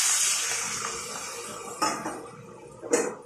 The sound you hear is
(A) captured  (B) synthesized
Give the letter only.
A